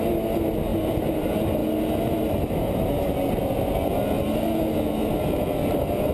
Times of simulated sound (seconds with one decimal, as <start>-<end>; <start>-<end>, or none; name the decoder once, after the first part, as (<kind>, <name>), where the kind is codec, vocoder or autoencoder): none